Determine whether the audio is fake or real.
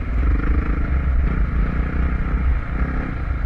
real